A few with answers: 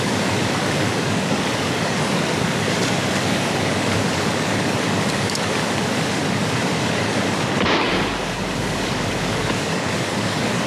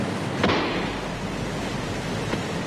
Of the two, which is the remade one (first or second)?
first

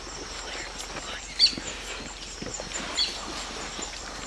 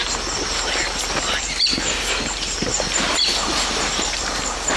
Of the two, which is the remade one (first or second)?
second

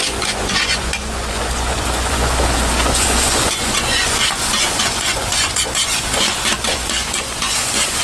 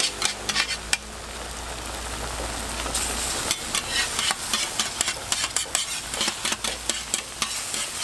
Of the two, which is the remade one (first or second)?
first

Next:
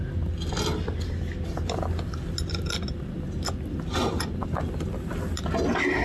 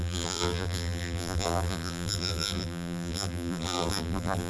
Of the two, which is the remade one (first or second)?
second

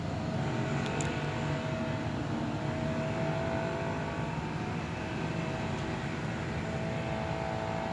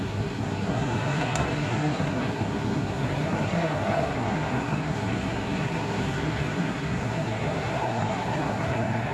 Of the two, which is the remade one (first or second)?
second